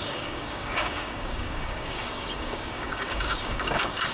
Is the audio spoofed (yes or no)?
yes